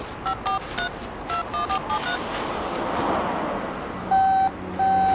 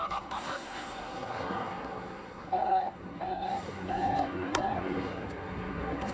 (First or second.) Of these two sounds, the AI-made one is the second